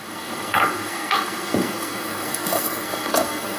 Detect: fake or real fake